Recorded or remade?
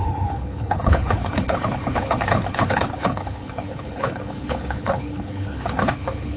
remade